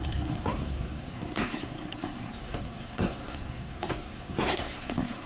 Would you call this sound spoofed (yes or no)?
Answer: yes